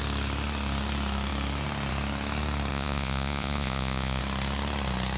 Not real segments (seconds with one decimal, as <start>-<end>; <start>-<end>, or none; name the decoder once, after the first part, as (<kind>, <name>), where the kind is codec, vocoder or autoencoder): 2.7-4.2 (vocoder, Vocos)